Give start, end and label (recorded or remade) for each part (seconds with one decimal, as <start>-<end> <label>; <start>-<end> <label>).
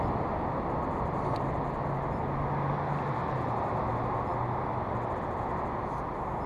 0.0-6.5 recorded